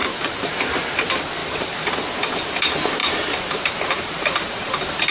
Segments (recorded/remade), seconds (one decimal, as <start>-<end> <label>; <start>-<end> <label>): 0.0-0.5 remade; 0.5-1.4 recorded; 1.4-1.9 remade; 1.9-3.0 recorded; 3.0-4.6 remade; 4.6-5.1 recorded